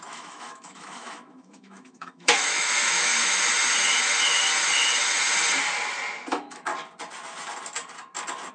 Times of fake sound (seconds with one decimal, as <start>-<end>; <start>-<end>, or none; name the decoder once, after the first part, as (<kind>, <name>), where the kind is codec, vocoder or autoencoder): 0.0-3.1 (autoencoder, DAC-VAE); 6.3-6.7